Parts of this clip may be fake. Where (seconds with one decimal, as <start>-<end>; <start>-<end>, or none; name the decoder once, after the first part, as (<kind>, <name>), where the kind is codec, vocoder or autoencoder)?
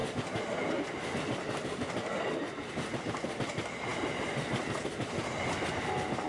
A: none